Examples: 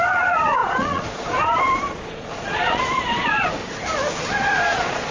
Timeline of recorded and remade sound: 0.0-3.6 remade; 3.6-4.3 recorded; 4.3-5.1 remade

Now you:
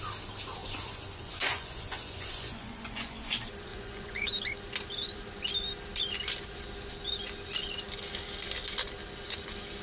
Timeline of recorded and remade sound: 0.0-0.6 recorded; 0.6-3.3 remade; 3.3-3.7 recorded; 3.7-4.3 remade; 4.3-9.8 recorded

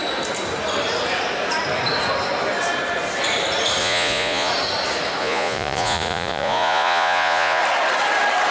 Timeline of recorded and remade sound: 0.0-3.8 recorded; 3.8-4.5 remade; 4.5-5.2 recorded; 5.2-7.6 remade; 7.6-8.5 recorded

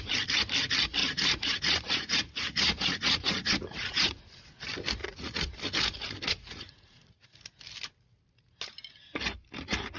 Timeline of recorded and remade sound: 0.0-1.0 recorded; 1.0-4.6 remade; 4.6-5.0 recorded; 5.0-5.5 remade; 5.5-6.3 recorded; 6.3-7.5 remade; 7.5-10.0 recorded

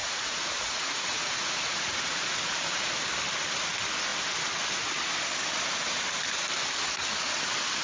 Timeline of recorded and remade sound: 0.0-2.9 remade; 2.9-7.8 recorded

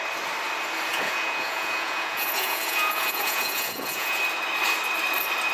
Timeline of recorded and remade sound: 0.0-0.9 recorded; 0.9-4.2 remade; 4.2-5.5 recorded

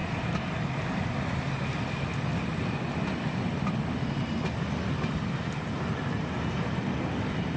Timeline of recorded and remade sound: 0.0-7.6 recorded